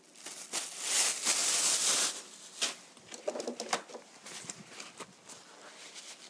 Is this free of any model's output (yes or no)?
yes